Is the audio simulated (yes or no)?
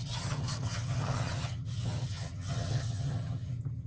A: yes